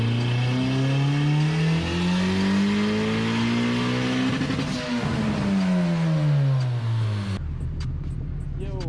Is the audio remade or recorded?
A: recorded